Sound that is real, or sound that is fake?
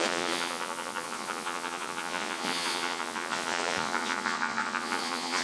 fake